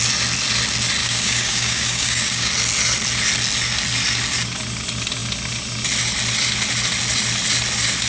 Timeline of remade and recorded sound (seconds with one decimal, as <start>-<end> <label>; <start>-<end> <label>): 0.0-1.0 recorded; 1.0-2.5 remade; 2.5-8.1 recorded